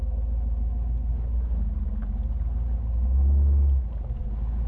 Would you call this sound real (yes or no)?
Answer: yes